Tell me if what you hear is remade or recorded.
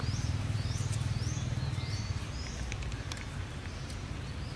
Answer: remade